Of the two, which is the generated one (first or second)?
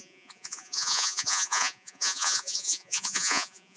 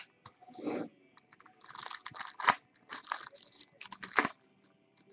first